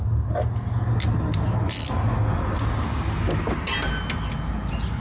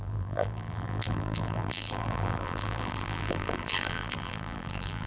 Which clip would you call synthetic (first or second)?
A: second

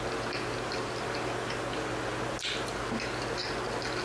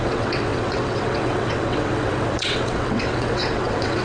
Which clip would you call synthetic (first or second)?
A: second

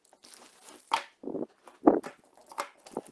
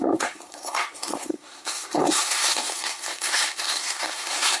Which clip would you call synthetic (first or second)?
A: second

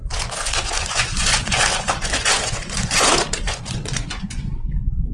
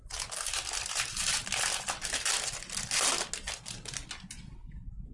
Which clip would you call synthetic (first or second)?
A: first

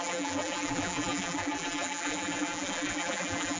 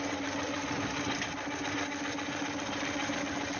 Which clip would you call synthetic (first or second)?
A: first